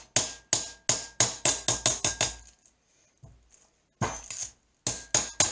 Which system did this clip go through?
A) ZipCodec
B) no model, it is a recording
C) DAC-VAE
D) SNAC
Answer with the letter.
B